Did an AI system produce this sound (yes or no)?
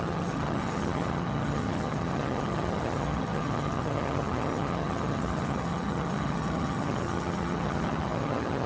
yes